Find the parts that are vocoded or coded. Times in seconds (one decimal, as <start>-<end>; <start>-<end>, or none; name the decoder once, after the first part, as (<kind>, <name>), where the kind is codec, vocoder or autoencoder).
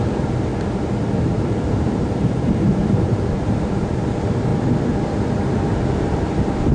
0.0-0.5 (vocoder, BigVGAN v2); 1.2-2.8; 3.4-4.5; 5.5-6.7